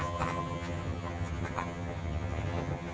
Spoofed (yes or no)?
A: yes